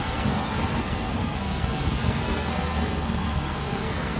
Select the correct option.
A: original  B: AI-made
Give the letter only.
B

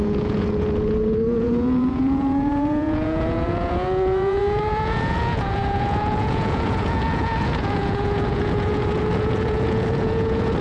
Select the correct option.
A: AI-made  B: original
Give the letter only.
A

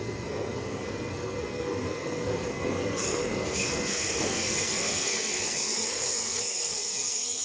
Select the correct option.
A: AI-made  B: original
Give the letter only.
A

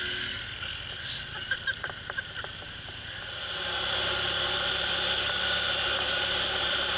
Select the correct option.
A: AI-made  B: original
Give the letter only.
B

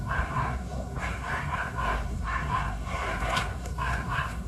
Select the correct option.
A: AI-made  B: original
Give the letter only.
A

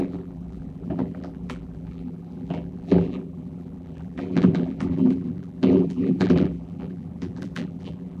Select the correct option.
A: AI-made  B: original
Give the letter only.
A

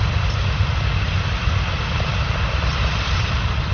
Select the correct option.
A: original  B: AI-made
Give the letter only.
A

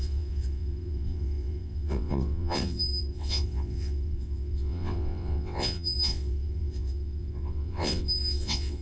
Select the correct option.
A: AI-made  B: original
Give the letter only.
A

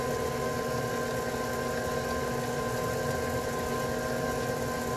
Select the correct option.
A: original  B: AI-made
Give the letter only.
A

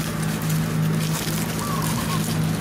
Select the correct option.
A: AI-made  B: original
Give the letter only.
B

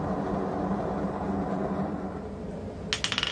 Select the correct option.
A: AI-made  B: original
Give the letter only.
B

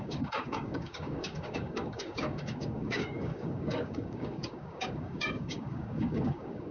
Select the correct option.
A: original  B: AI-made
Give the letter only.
B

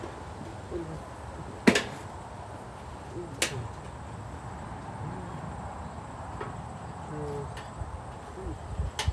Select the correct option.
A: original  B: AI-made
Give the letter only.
A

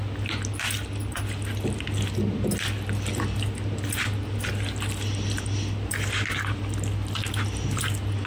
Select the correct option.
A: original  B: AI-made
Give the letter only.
A